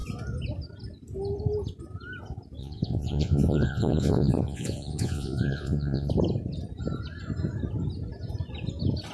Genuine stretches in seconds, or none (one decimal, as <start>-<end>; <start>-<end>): 0.0-2.6; 6.1-9.1